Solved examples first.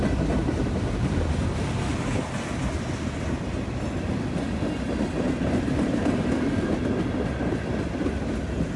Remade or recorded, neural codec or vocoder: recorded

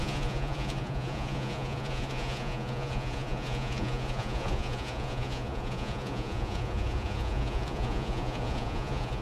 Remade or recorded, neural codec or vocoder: remade, vocoder, Vocos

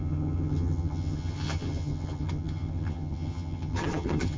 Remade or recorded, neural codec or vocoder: remade, vocoder, HiFi-GAN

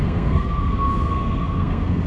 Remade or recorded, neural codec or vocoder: remade, codec, SNAC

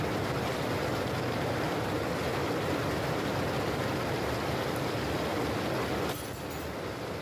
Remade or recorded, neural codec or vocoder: recorded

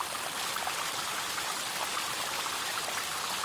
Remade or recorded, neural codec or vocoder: recorded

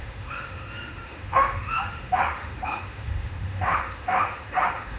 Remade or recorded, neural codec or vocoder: remade, autoencoder, DAC-VAE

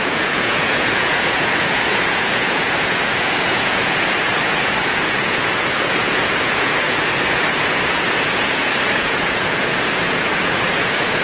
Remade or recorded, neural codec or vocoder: remade, vocoder, Vocos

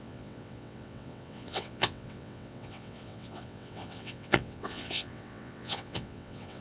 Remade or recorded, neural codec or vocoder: remade, vocoder, WaveNeXt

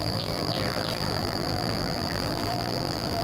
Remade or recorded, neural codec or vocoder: remade, vocoder, BigVGAN v2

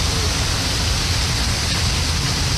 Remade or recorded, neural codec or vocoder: recorded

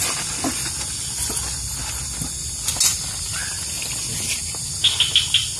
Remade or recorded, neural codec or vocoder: recorded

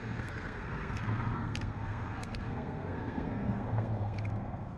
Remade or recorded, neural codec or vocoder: remade, codec, SNAC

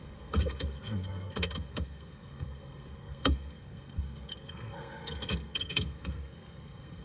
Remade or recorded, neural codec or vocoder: remade, codec, SNAC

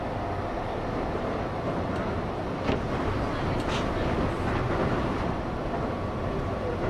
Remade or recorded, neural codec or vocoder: recorded